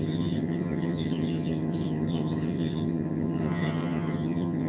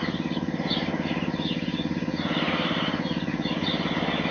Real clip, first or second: second